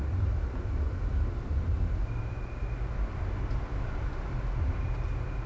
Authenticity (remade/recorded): recorded